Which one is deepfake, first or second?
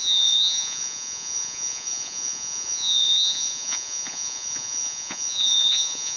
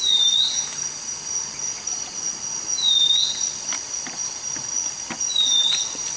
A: first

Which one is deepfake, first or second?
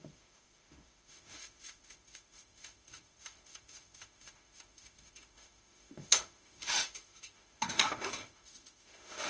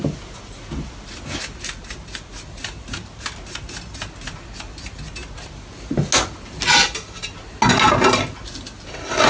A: first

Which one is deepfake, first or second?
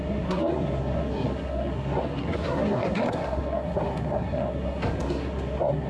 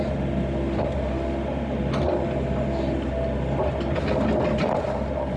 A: first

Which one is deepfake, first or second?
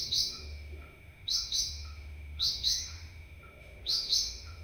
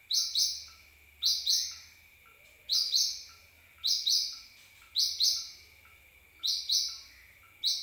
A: first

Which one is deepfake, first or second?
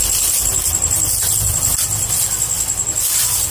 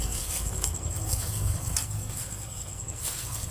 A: second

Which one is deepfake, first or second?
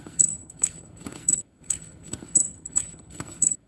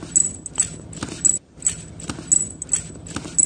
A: first